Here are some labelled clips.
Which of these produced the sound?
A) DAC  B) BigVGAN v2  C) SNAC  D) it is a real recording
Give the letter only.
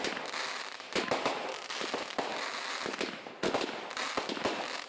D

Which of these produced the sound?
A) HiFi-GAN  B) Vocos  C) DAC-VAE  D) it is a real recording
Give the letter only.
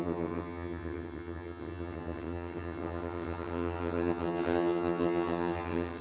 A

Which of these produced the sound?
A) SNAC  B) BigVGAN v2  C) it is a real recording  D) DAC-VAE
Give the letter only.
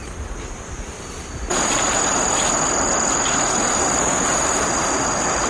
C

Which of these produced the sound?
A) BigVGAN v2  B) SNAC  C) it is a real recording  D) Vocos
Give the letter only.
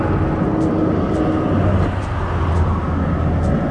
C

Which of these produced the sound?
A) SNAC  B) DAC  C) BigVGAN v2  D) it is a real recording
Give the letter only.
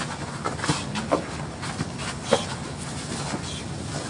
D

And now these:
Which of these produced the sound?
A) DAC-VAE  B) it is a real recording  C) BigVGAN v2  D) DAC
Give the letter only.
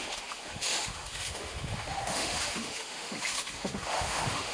A